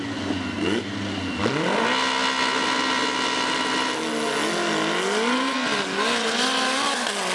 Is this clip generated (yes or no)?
no